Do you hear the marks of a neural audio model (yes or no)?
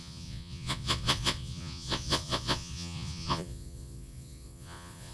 yes